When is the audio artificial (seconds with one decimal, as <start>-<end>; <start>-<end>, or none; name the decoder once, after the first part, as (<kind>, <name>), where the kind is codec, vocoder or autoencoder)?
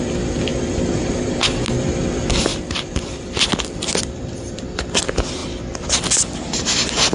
0.5-1.2 (vocoder, BigVGAN v2); 2.5-4.6